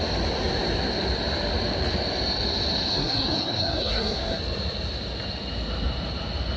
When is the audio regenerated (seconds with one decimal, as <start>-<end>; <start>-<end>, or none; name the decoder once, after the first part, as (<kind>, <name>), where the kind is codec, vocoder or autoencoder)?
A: 2.9-4.4 (codec, SNAC)